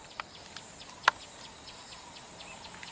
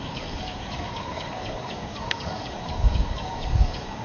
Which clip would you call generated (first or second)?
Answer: second